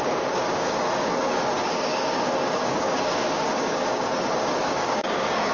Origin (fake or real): fake